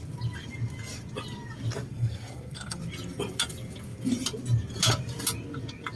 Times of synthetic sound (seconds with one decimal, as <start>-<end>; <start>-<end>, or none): 1.9-2.8